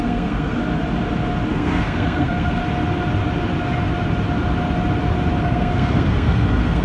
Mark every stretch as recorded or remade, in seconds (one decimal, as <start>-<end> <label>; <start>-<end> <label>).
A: 0.0-0.6 remade; 0.6-1.5 recorded; 1.5-2.6 remade; 2.6-5.4 recorded; 5.4-6.8 remade